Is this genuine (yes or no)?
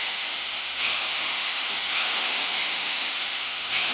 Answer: no